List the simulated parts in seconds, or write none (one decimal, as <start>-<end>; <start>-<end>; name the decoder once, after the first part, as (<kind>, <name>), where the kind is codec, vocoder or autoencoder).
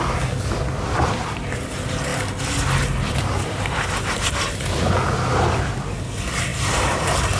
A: 6.5-7.4 (vocoder, BigVGAN v2)